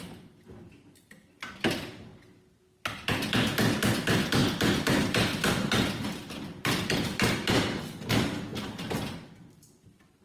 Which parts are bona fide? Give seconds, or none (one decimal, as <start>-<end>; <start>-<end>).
2.1-3.9